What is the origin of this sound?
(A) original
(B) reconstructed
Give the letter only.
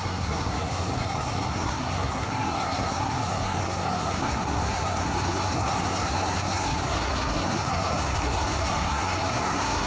B